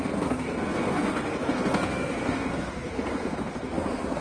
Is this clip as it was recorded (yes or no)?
no